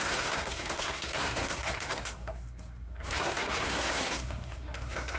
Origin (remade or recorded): remade